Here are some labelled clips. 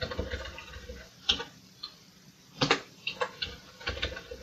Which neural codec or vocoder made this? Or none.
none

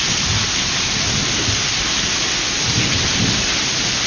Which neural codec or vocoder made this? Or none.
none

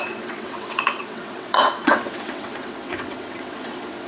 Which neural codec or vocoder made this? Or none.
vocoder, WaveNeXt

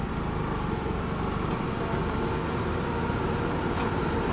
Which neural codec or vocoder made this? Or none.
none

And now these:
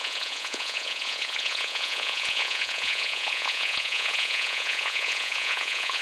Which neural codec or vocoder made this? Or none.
vocoder, Vocos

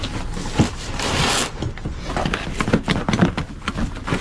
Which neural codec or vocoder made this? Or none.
none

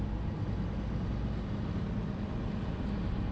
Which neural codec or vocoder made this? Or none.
none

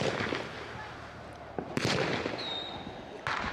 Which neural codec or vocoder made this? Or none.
none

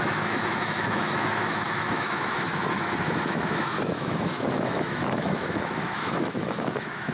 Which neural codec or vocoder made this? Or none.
autoencoder, DAC-VAE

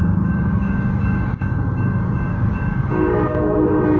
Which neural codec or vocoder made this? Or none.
codec, DAC